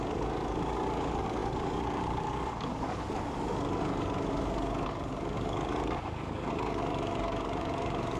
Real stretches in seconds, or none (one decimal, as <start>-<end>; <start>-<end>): none